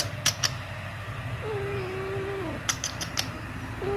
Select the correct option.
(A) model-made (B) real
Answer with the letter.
B